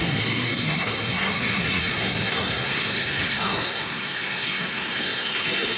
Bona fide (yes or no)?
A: no